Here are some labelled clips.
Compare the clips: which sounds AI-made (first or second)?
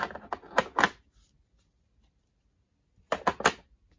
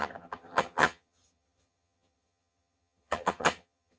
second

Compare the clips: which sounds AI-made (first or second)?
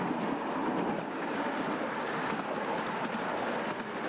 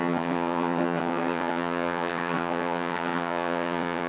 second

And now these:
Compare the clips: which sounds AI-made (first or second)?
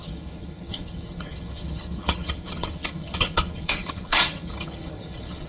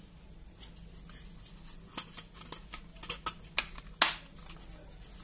first